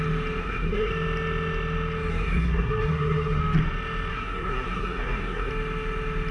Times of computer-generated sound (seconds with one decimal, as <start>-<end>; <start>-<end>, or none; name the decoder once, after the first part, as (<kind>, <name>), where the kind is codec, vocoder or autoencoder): 0.4-0.9 (codec, SNAC); 2.1-3.4; 4.1-5.5